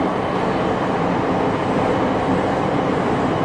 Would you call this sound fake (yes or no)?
no